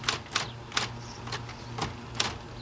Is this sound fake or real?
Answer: real